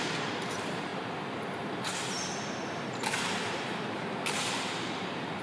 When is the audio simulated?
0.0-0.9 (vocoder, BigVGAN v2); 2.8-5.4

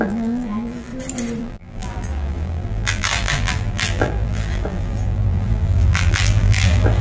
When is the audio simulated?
0.0-0.9 (vocoder, BigVGAN v2); 1.4-7.0

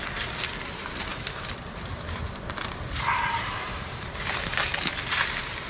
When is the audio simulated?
1.1-4.5 (vocoder, BigVGAN v2)

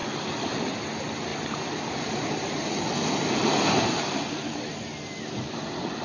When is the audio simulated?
0.0-0.6 (vocoder, BigVGAN v2); 1.3-3.6

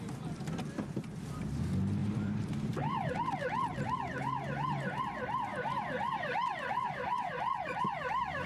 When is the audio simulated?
2.0-3.1 (vocoder, BigVGAN v2); 5.5-8.1

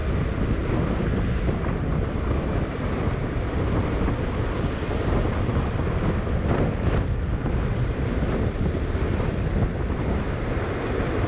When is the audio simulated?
none

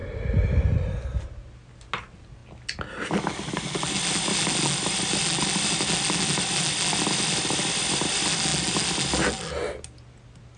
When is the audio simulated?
none

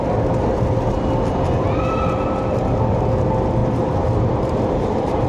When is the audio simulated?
3.6-5.3 (vocoder, BigVGAN v2)